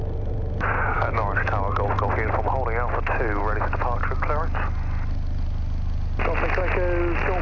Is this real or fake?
real